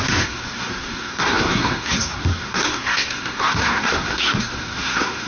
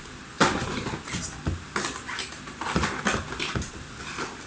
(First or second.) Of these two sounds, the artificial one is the first